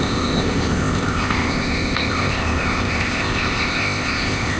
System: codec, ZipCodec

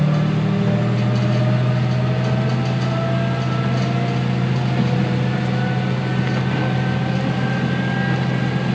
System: none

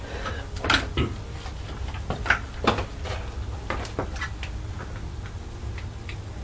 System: none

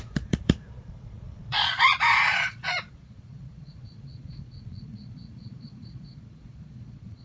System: vocoder, Vocos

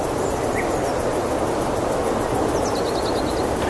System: none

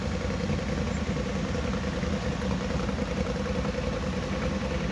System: none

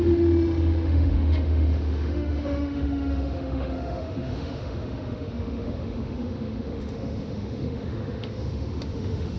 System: autoencoder, DAC-VAE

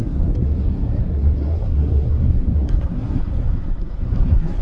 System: codec, SNAC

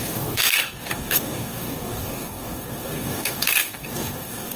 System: codec, DAC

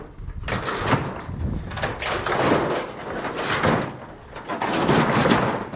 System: none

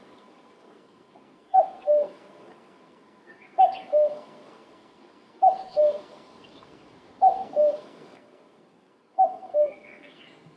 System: codec, SNAC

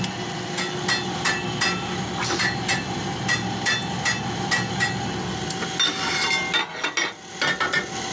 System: none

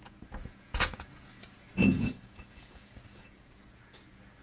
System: vocoder, Vocos